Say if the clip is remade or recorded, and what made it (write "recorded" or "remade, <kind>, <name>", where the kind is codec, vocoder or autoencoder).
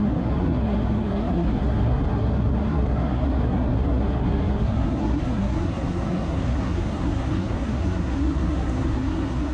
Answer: remade, codec, SNAC